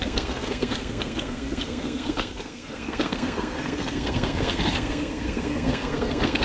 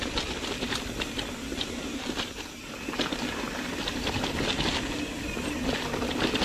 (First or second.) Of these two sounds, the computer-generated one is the first